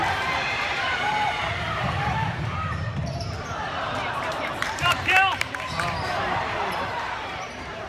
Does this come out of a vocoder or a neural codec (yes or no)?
yes